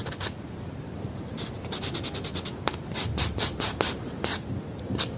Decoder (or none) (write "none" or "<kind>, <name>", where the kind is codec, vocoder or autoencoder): none